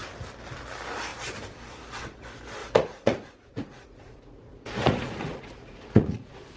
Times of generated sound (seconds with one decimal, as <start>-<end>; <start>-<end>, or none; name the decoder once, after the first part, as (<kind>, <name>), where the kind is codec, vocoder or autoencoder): 2.6-6.6 (vocoder, Vocos)